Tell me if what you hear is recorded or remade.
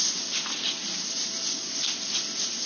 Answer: recorded